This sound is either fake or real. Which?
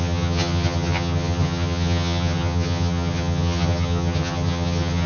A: fake